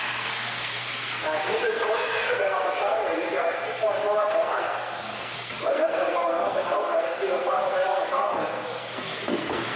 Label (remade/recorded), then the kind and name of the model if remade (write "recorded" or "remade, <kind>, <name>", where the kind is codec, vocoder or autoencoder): remade, codec, SNAC